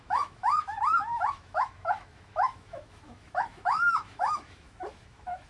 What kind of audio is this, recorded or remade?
remade